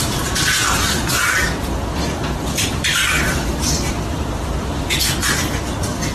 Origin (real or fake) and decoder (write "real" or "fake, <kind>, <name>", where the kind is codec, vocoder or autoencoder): fake, vocoder, BigVGAN v2